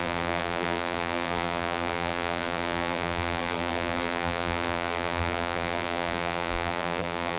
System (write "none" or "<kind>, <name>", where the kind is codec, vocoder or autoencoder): vocoder, BigVGAN v2